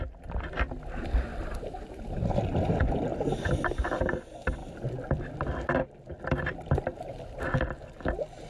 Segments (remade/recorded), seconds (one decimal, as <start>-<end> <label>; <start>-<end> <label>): 0.0-1.3 recorded; 1.3-2.0 remade; 2.0-3.1 recorded; 3.1-4.0 remade; 4.0-4.6 recorded; 4.6-5.2 remade; 5.2-8.5 recorded